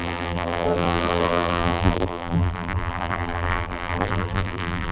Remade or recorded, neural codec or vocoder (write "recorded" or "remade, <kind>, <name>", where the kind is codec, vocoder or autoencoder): remade, vocoder, BigVGAN v2